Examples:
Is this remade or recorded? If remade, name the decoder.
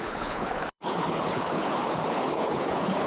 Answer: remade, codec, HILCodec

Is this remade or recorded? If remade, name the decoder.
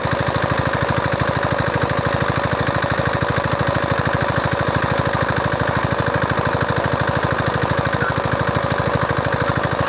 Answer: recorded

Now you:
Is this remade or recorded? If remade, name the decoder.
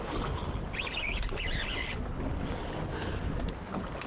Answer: recorded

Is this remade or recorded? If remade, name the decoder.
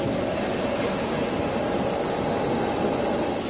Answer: recorded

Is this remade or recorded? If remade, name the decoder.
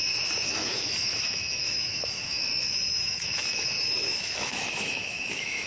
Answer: remade, autoencoder, DAC-VAE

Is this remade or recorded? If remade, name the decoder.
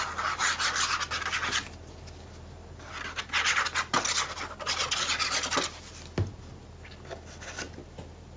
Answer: recorded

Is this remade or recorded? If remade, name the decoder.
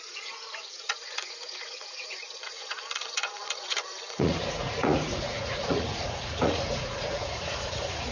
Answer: remade, vocoder, Vocos